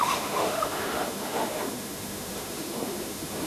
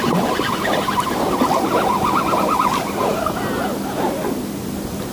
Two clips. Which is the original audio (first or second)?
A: second